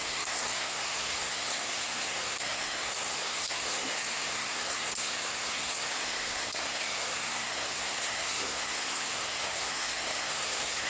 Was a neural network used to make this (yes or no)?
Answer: yes